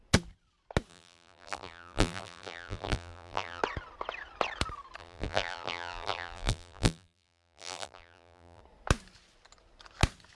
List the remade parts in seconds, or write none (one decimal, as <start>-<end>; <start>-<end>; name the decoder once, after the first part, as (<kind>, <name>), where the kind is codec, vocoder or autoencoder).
0.9-3.6 (vocoder, BigVGAN v2); 5.0-8.6